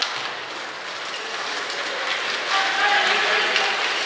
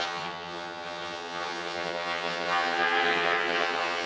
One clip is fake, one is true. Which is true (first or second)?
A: first